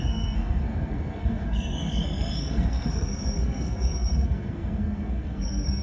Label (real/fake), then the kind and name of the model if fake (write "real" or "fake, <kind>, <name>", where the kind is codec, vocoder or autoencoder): fake, codec, SNAC